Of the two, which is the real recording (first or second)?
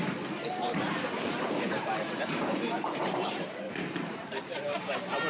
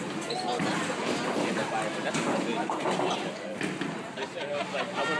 second